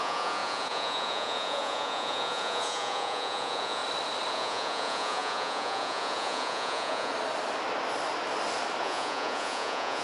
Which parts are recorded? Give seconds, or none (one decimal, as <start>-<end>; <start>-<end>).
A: 3.8-4.3; 7.1-8.8